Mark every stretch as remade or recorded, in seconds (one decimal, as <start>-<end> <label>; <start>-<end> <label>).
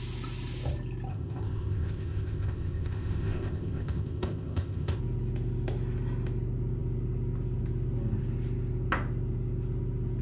0.0-1.1 recorded; 1.1-5.0 remade; 5.0-10.2 recorded